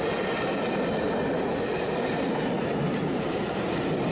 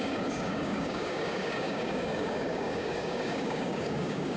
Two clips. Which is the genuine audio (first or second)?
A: first